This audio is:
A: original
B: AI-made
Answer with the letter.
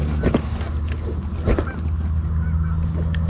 A